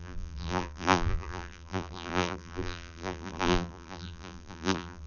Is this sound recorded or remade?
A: remade